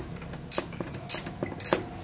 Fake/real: real